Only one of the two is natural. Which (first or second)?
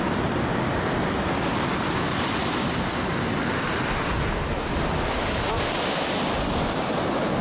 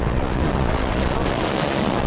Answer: first